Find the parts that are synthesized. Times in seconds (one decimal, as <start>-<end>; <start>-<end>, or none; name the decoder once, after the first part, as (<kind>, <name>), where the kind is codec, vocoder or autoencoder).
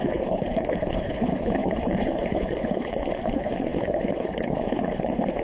0.0-5.4 (codec, HILCodec)